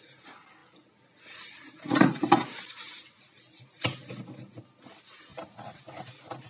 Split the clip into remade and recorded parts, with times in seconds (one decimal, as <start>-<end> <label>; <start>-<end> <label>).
0.0-5.3 recorded; 5.3-5.8 remade; 5.8-6.5 recorded

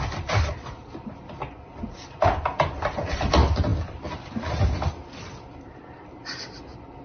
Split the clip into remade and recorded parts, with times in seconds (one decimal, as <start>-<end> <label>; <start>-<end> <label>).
0.0-7.0 recorded

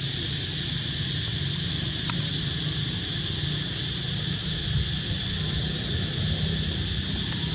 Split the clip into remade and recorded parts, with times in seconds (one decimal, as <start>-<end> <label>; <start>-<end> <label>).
0.0-7.5 recorded

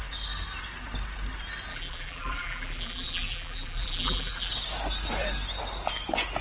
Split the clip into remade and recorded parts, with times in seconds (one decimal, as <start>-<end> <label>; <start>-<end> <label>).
0.0-1.7 recorded; 1.7-4.5 remade; 4.5-6.4 recorded

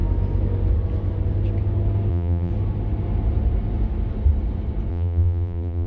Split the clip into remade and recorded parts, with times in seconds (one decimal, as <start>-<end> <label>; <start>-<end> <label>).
0.0-2.1 recorded; 2.1-2.5 remade; 2.5-4.9 recorded; 4.9-5.9 remade

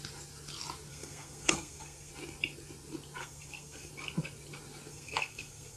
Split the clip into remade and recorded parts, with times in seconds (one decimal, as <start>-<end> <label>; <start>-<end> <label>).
0.0-0.9 recorded; 0.9-2.1 remade; 2.1-3.2 recorded; 3.2-3.9 remade; 3.9-4.9 recorded; 4.9-5.8 remade